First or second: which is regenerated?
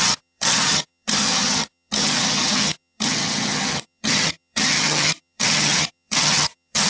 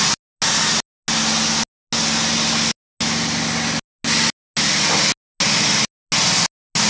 first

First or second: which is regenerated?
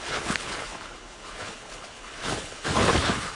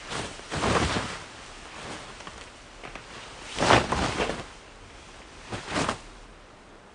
first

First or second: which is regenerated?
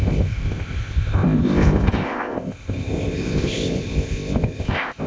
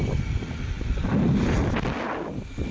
first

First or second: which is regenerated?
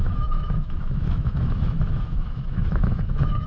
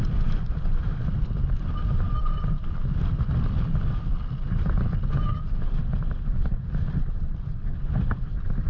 first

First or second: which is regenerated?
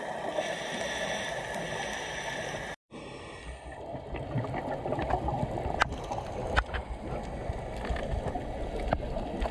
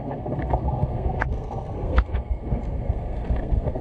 second